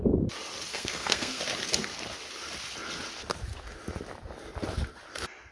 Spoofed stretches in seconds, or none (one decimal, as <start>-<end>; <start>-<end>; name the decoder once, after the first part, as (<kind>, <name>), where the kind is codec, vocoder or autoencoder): 0.7-1.4 (codec, SNAC)